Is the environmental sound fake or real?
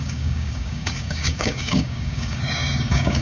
fake